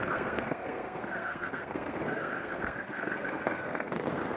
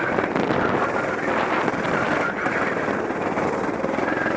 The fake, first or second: first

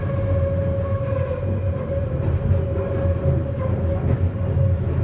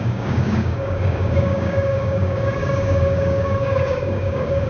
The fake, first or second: second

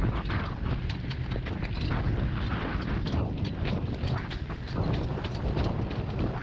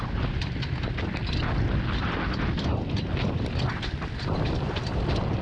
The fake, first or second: second